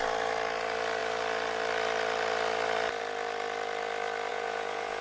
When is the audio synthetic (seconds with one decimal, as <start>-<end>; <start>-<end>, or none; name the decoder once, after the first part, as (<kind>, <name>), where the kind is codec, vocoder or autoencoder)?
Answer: 4.3-5.0 (vocoder, Vocos)